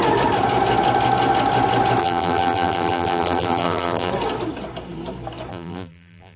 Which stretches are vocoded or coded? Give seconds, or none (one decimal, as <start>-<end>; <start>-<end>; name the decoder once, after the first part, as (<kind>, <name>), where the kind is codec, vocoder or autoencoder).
2.0-4.1 (vocoder, BigVGAN v2); 5.5-6.4